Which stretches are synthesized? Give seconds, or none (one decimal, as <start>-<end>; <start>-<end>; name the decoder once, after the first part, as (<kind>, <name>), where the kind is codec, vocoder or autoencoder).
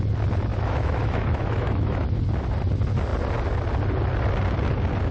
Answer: 0.5-2.2 (autoencoder, DAC-VAE)